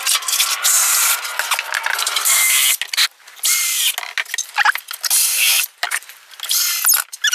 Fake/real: real